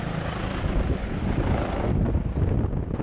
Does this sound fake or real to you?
real